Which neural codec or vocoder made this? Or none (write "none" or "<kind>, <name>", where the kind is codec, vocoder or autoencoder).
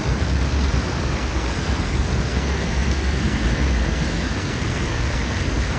codec, SNAC